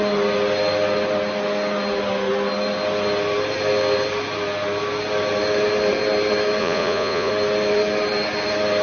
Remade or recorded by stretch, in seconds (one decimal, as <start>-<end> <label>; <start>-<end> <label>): 0.0-6.6 recorded; 6.6-7.3 remade; 7.3-8.8 recorded